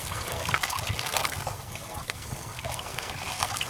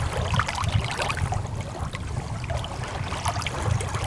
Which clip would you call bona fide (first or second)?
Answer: second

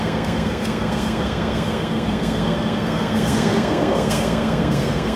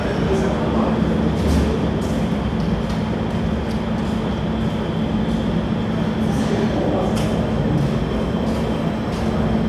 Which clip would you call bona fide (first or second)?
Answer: second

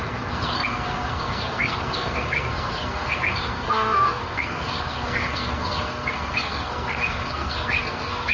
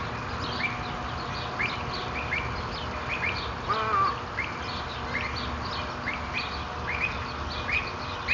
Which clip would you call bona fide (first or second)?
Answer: second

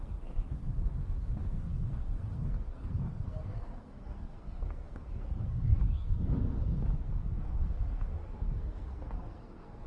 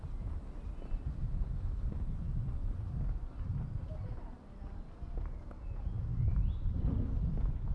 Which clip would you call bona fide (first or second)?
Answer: second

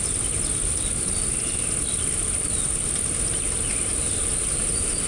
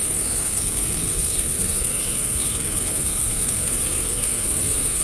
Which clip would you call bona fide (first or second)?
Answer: first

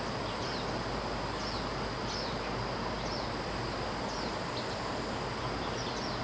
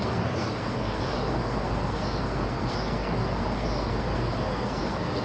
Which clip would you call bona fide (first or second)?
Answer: first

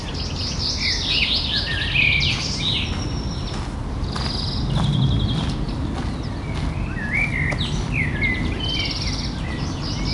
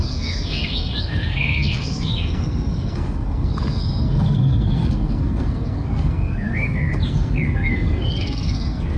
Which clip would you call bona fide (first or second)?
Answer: first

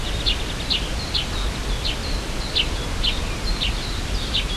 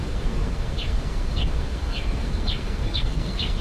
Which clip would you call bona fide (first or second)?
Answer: first